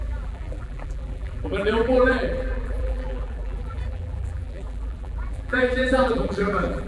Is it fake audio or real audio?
fake